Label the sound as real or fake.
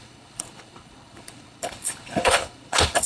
fake